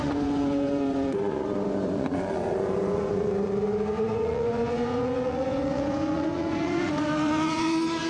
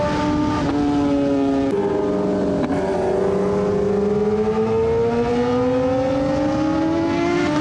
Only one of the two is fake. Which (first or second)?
first